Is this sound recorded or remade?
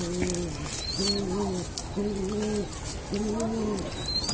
recorded